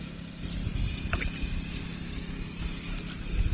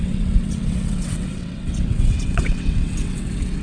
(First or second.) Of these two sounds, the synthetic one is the second